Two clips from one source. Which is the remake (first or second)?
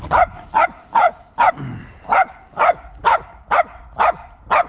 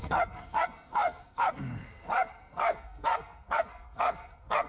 second